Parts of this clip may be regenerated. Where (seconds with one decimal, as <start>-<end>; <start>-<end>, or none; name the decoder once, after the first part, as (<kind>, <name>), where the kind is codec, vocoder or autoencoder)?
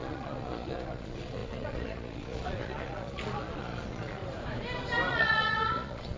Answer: 0.0-4.2 (vocoder, Vocos); 5.1-6.2